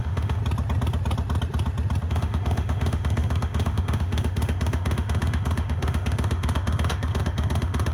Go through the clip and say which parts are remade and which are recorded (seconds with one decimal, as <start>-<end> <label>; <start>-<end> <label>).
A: 0.0-0.4 remade; 0.4-2.1 recorded; 2.1-7.9 remade